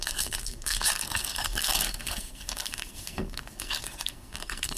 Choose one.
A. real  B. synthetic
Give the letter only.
B